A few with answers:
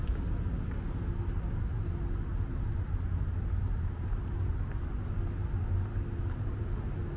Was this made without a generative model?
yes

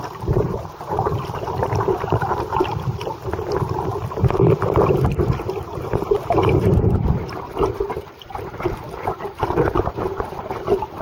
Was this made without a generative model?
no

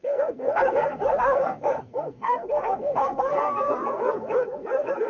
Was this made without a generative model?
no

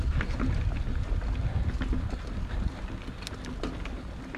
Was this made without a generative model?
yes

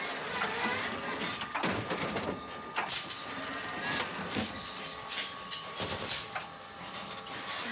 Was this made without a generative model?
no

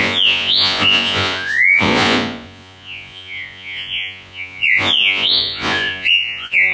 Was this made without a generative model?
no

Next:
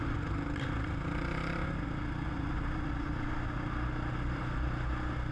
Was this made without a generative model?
yes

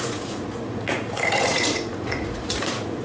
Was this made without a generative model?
no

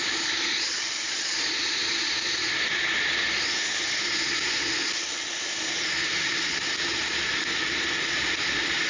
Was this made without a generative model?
yes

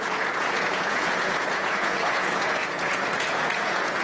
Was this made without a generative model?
no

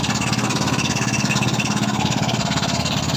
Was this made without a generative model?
no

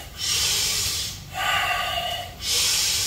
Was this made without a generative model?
no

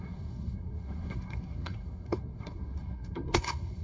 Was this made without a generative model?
no